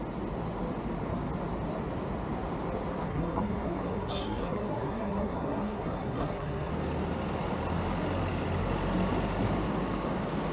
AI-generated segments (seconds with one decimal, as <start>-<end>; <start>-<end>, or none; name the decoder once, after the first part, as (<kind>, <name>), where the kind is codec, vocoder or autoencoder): 3.1-6.7 (codec, SNAC)